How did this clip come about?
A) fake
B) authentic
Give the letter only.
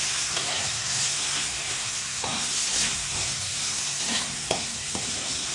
A